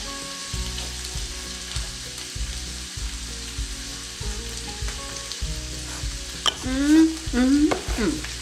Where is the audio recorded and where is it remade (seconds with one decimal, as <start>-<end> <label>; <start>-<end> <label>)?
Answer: 0.0-0.4 recorded; 0.4-1.9 remade; 1.9-3.9 recorded; 3.9-5.1 remade; 5.1-8.4 recorded